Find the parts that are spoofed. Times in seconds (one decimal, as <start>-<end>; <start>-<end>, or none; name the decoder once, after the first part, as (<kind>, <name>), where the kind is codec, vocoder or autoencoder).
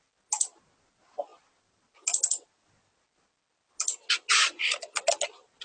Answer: none